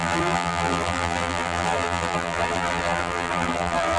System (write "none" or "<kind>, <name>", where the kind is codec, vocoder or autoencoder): vocoder, BigVGAN v2